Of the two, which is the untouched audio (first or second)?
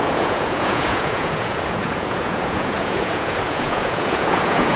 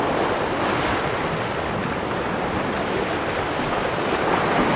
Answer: second